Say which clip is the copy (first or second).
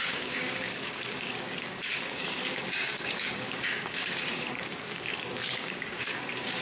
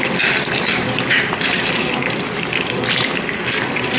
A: first